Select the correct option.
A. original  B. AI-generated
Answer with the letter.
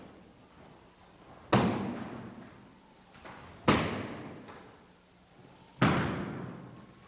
A